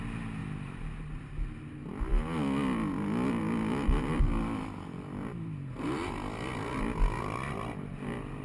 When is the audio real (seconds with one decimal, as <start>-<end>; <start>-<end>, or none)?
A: 0.0-8.4